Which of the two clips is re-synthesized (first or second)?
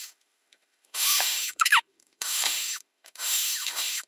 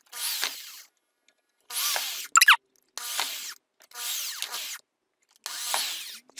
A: first